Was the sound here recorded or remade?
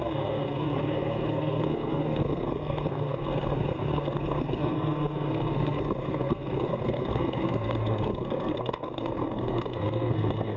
remade